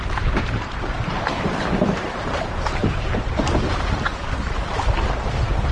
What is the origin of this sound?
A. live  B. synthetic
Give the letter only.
B